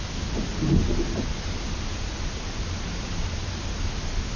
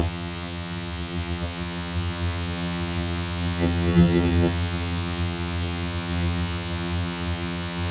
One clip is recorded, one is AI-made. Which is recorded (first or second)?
first